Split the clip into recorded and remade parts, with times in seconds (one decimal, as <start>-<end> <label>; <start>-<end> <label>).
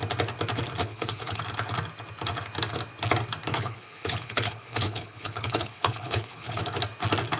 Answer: 0.0-0.8 recorded; 0.8-1.4 remade; 1.4-3.5 recorded; 3.5-6.6 remade; 6.6-7.4 recorded